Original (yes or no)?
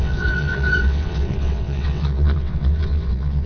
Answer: no